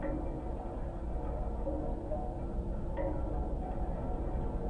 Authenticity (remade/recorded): recorded